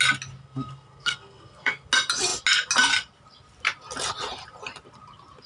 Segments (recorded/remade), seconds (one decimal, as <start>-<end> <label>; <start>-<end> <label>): 0.0-0.4 recorded; 0.4-1.9 remade; 1.9-5.5 recorded

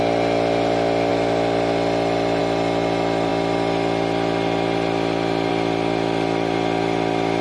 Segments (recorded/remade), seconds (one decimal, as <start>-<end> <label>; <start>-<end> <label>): 0.0-7.4 recorded

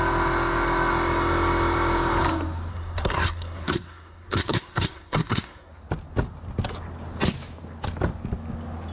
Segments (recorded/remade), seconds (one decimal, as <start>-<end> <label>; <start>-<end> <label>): 0.0-2.7 recorded; 2.7-5.7 remade; 5.7-8.9 recorded

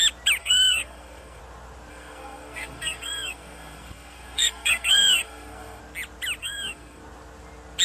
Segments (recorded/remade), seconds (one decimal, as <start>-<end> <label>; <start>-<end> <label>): 0.0-0.4 recorded; 0.4-1.4 remade; 1.4-1.9 recorded; 1.9-5.8 remade; 5.8-6.4 recorded; 6.4-7.0 remade; 7.0-7.8 recorded

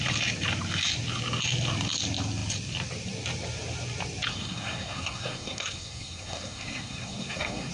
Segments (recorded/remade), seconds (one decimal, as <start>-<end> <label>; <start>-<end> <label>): 0.0-4.3 recorded; 4.3-7.7 remade

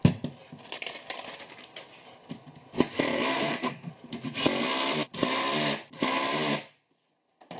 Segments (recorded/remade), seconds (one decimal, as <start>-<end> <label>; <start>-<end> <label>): 0.0-3.3 recorded; 3.3-3.9 remade; 3.9-7.6 recorded